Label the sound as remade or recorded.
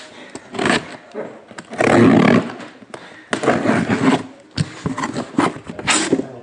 recorded